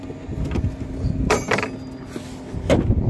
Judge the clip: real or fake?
real